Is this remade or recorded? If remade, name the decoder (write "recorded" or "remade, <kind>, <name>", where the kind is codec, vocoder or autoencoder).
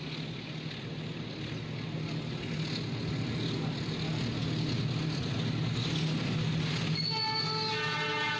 recorded